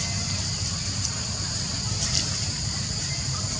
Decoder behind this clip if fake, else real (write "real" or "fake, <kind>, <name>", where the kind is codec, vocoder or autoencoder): real